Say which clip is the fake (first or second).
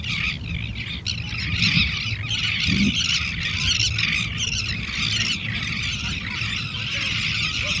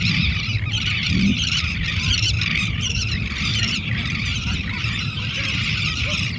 second